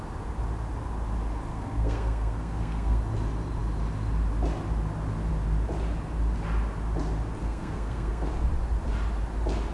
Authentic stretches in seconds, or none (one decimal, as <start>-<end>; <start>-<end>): 0.0-1.5; 3.0-7.4; 8.3-9.7

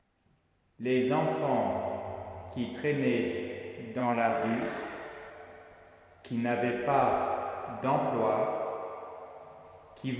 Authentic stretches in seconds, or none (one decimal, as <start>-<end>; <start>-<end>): 0.0-4.0; 5.3-10.2